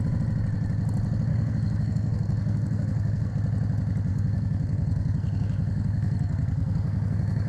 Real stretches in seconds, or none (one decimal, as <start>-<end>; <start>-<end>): 0.0-1.3; 3.3-4.1